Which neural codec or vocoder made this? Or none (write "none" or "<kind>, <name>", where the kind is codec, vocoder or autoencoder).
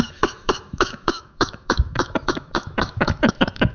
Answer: autoencoder, DAC-VAE